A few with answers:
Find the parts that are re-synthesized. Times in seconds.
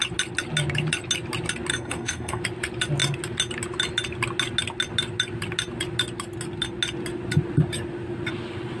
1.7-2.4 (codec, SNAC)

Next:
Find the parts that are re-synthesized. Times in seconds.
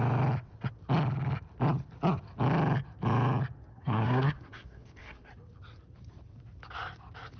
3.7-5.3 (codec, SNAC)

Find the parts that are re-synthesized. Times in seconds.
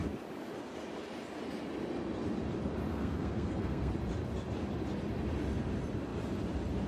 2.9-3.9 (codec, SNAC)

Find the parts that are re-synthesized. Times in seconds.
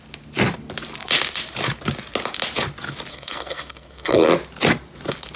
3.1-4.3 (codec, SNAC)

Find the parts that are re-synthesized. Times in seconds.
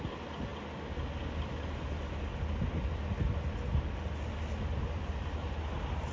none